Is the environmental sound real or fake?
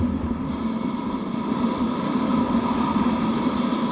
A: real